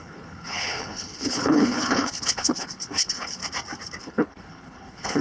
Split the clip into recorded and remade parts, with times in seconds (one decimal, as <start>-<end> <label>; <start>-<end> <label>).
0.0-3.4 remade; 3.4-4.0 recorded; 4.0-5.2 remade